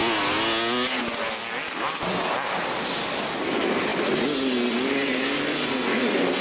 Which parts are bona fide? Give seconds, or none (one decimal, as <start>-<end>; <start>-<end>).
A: 0.0-6.4